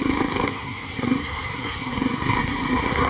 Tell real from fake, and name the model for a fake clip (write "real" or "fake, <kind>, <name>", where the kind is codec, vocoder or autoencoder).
fake, codec, SNAC